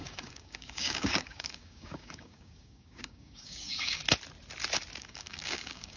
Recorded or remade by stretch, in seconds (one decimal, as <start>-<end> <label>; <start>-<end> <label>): 0.0-4.0 remade; 4.0-5.0 recorded; 5.0-6.0 remade